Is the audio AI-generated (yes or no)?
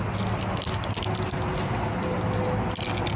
no